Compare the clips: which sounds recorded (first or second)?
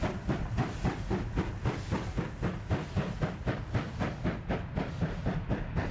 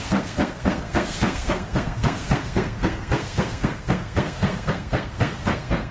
first